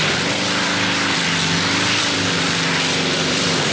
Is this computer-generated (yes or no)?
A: yes